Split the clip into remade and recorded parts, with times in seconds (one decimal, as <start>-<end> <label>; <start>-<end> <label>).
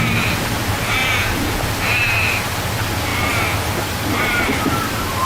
0.0-1.0 recorded; 1.0-1.6 remade; 1.6-5.2 recorded